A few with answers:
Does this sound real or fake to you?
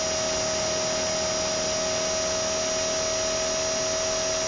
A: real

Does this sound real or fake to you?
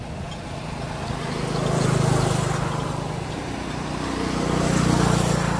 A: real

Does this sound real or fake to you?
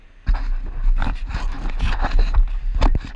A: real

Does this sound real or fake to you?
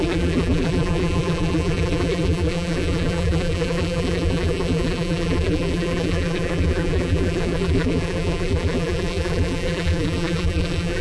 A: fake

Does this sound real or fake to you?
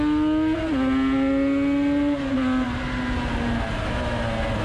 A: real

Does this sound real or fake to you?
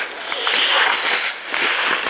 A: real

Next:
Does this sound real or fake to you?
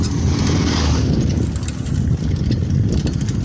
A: real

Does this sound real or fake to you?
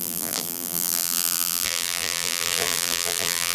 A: fake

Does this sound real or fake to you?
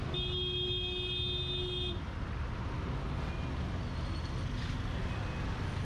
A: real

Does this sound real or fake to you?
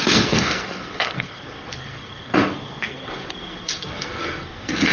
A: fake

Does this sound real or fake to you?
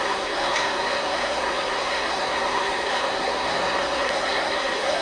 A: fake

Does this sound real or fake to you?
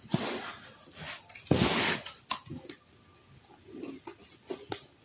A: real